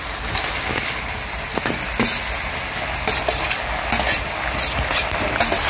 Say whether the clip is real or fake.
real